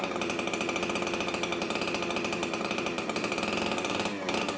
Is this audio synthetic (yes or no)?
no